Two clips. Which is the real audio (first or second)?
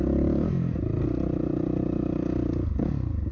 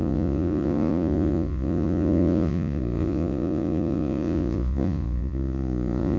first